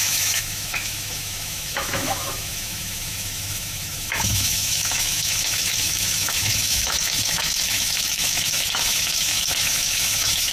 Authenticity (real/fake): fake